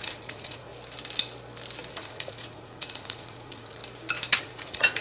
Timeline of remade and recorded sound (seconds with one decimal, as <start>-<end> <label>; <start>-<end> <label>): 0.0-0.7 remade; 0.7-1.9 recorded; 1.9-3.8 remade; 3.8-4.4 recorded; 4.4-5.0 remade